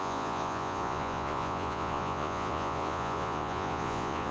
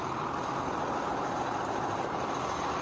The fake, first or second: first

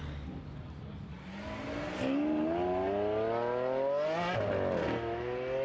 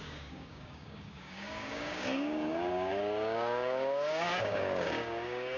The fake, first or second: second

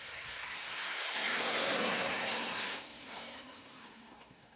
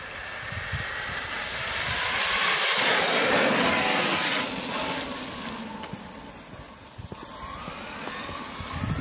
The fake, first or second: first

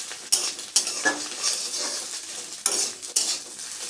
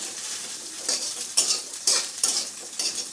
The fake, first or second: second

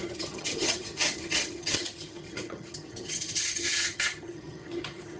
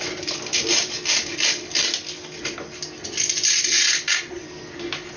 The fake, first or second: first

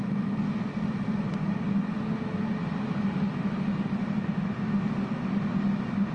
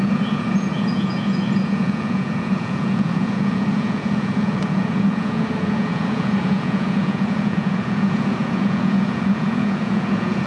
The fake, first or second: second